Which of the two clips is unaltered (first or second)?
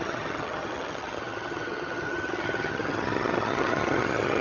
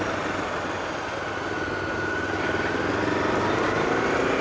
second